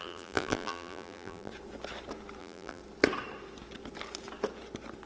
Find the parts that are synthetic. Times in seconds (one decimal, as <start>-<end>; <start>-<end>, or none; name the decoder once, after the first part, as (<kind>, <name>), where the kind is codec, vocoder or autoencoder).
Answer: 0.0-1.5 (vocoder, BigVGAN v2); 2.4-2.8